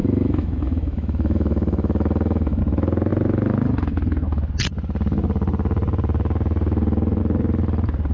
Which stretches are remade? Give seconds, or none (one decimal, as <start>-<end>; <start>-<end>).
0.0-2.6